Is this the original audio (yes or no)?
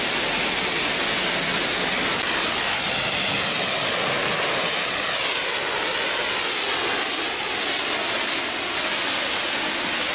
yes